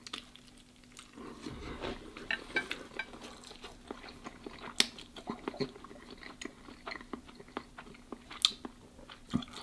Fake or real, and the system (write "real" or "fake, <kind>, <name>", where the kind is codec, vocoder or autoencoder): real